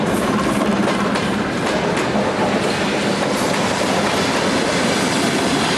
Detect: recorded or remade recorded